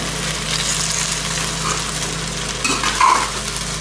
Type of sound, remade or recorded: recorded